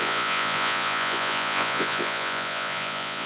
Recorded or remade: remade